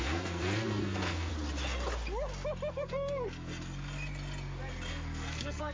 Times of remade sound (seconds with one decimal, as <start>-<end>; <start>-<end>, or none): 0.0-1.3; 2.7-3.5; 4.9-5.7